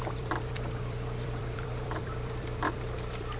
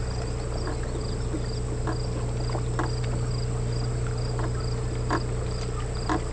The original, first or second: second